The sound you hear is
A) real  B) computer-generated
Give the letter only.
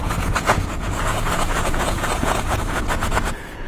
B